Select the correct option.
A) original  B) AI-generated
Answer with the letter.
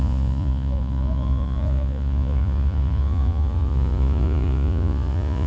B